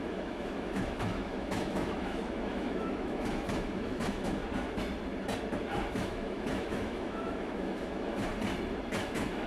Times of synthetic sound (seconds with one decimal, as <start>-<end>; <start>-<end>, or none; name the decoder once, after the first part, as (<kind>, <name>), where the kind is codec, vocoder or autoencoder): 0.0-4.4 (autoencoder, DAC-VAE); 5.9-8.3; 9.0-9.5